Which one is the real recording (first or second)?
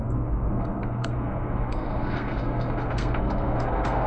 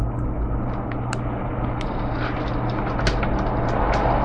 second